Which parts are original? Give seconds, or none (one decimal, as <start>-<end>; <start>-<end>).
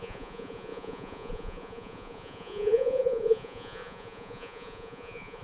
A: none